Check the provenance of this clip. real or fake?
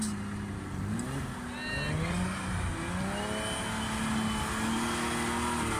real